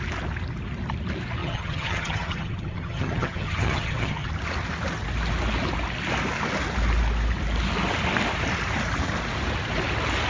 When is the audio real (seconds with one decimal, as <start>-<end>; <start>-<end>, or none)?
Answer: 0.0-1.4; 4.3-10.3

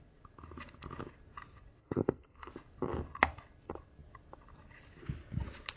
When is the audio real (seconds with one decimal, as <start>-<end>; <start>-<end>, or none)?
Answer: 0.0-1.8; 2.5-5.8

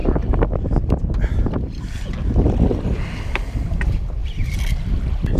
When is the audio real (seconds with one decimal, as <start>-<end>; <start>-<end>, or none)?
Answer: 0.0-5.4

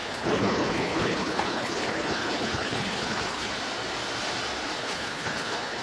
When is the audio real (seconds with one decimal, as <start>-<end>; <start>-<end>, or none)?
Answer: 3.5-4.8

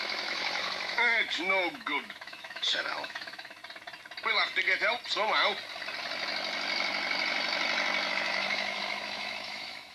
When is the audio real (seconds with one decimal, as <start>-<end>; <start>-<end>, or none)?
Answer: 3.6-8.1

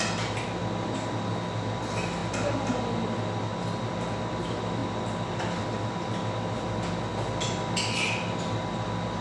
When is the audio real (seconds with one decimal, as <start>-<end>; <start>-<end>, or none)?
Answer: 0.0-9.2

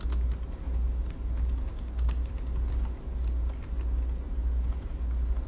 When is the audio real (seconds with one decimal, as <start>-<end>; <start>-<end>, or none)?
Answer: 0.0-1.7; 2.3-5.5

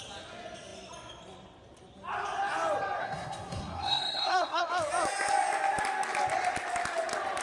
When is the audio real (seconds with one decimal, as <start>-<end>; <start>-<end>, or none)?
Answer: 0.0-3.0; 4.6-7.4